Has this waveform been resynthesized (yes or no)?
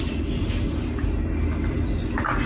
no